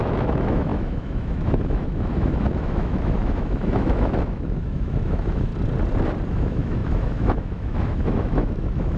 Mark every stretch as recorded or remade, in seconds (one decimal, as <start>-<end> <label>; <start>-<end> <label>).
0.0-5.5 remade; 5.5-6.3 recorded; 6.3-9.0 remade